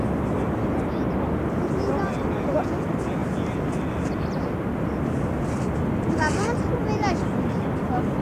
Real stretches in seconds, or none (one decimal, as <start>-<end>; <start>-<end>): 0.0-8.2